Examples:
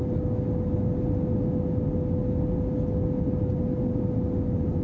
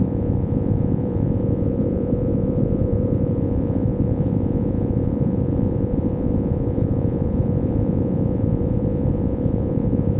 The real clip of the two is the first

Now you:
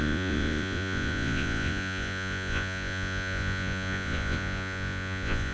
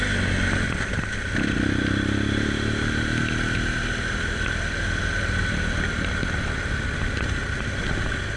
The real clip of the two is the second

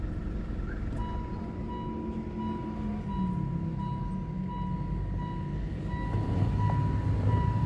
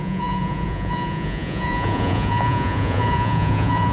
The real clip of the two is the first